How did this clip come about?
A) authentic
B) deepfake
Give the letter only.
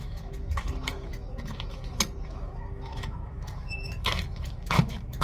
B